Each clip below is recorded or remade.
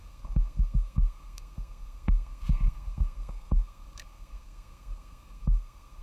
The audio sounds remade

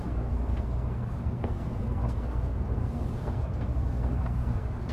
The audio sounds remade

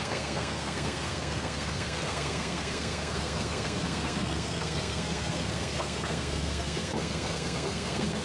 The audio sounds remade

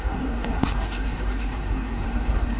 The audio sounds remade